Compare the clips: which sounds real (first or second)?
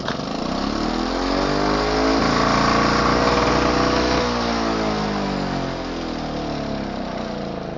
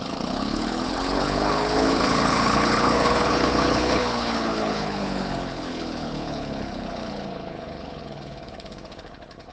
first